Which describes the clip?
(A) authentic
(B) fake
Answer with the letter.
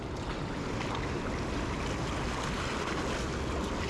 A